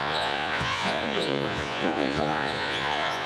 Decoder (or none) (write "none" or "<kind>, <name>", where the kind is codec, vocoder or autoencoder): vocoder, Vocos